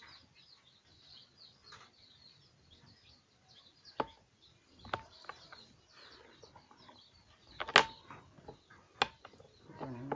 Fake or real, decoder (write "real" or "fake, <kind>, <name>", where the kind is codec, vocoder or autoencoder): real